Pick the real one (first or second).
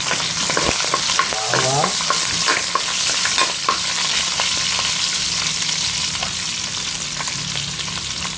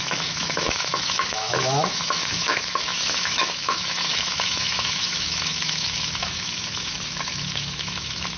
first